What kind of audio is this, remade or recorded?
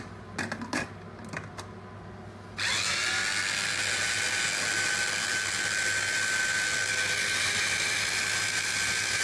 recorded